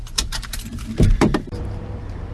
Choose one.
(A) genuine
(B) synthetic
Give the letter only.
B